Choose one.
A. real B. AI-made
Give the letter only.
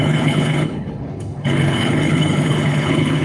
B